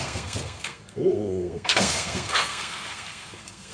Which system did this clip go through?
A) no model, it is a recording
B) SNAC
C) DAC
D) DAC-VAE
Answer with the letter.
B